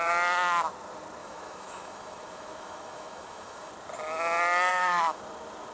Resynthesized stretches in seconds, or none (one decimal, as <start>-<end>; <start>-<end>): 1.2-3.7; 4.7-5.2